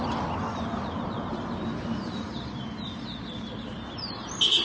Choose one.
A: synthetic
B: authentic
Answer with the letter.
B